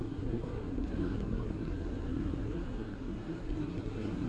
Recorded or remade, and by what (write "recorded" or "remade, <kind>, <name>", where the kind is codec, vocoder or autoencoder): remade, codec, SNAC